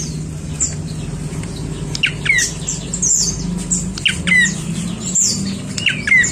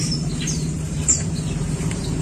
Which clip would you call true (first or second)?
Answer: first